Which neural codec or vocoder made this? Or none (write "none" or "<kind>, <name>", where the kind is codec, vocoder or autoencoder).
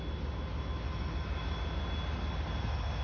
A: none